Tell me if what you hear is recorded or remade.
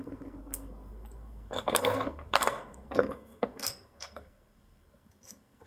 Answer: remade